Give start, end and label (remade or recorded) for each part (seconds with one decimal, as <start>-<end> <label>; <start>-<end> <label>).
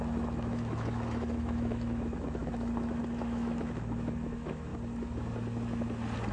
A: 0.0-4.7 remade; 4.7-6.3 recorded